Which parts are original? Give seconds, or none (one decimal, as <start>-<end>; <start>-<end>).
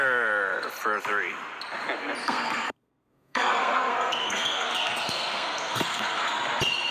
0.0-2.2; 6.3-6.9